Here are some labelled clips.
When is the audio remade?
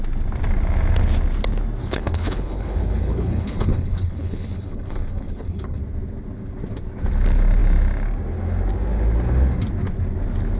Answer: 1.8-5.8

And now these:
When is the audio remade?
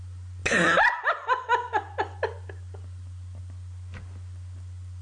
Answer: none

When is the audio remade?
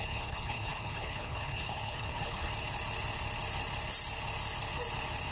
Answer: 0.0-2.5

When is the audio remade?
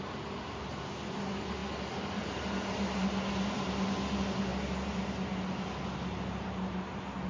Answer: none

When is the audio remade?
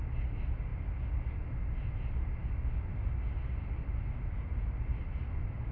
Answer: none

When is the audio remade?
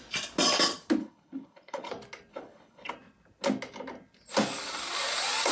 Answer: 1.0-1.9; 2.3-2.9